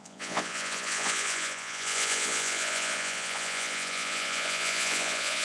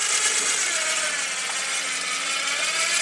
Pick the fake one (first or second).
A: first